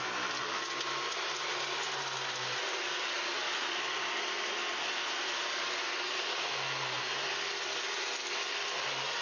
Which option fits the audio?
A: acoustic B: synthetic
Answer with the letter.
A